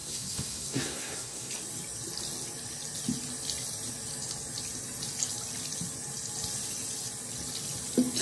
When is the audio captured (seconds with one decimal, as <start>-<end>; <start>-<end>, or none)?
1.5-8.2